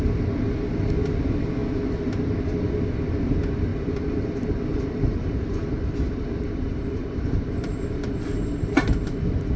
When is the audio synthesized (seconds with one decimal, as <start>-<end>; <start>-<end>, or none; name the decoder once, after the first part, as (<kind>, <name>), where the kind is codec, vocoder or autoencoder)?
3.7-4.3 (vocoder, BigVGAN v2); 4.7-9.6